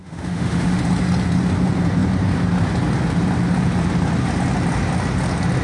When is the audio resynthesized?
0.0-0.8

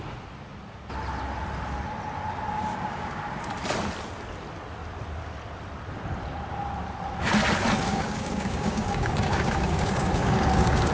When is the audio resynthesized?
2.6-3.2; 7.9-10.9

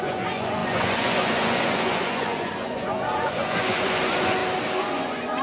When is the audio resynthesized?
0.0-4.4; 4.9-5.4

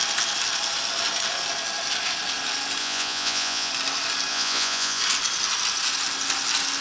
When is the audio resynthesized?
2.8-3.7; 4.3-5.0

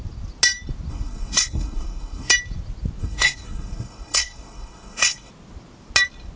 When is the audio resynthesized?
0.9-2.3; 3.0-5.3

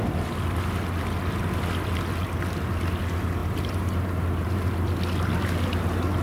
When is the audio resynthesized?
3.4-4.6

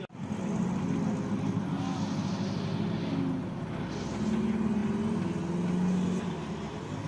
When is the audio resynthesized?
none